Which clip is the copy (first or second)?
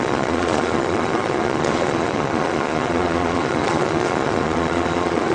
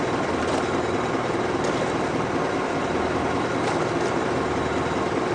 first